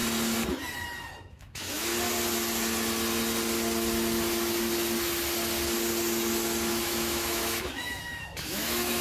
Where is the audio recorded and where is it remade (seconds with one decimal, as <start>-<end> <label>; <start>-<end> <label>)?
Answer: 0.0-1.2 recorded; 1.2-1.9 remade; 1.9-6.7 recorded; 6.7-9.0 remade

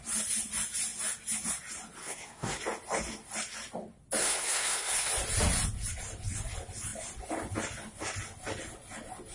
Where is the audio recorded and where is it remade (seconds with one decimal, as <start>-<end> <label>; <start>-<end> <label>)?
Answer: 0.0-2.0 recorded; 2.0-2.6 remade; 2.6-4.2 recorded; 4.2-5.1 remade; 5.1-9.3 recorded

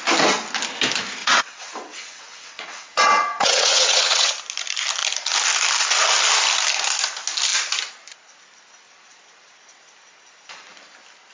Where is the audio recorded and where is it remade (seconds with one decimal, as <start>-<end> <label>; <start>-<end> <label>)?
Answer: 0.0-1.2 recorded; 1.2-4.3 remade; 4.3-11.3 recorded

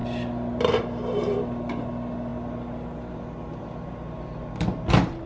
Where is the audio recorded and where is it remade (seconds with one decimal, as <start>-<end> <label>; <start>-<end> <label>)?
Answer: 0.0-5.3 recorded

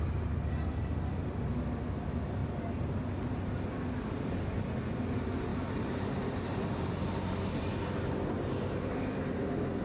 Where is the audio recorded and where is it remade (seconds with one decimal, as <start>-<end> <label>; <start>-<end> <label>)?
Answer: 0.0-5.5 recorded; 5.5-6.9 remade; 6.9-9.8 recorded

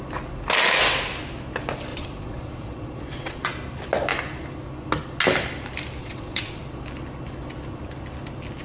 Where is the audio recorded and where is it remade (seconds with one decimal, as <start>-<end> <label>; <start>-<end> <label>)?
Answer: 0.0-1.9 recorded; 1.9-3.5 remade; 3.5-6.0 recorded; 6.0-6.6 remade; 6.6-8.6 recorded

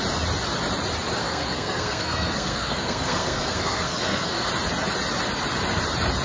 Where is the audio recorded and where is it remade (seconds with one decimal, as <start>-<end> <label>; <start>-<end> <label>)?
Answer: 0.0-1.2 recorded; 1.2-4.5 remade; 4.5-6.2 recorded